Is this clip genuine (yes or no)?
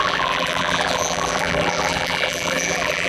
no